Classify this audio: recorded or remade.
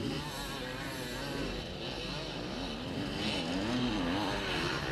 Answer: recorded